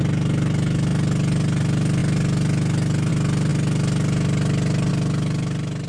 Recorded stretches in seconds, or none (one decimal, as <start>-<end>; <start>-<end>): 0.0-5.9